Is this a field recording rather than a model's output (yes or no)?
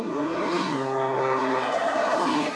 no